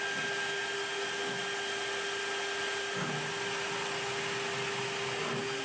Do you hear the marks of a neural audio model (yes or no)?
no